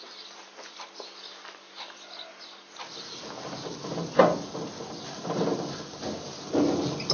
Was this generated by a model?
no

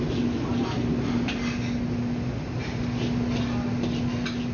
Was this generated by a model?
no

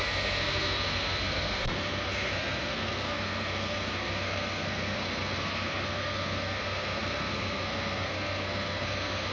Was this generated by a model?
yes